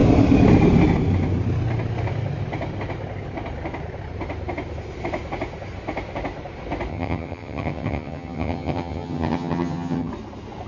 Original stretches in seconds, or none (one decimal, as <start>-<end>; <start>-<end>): 0.0-6.9; 10.1-10.7